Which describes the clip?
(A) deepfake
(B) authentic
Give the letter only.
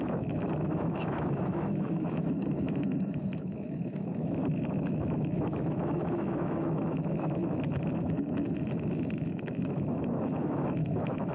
A